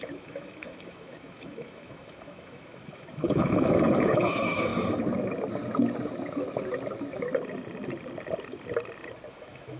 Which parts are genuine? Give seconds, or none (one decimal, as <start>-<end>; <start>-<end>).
4.7-9.3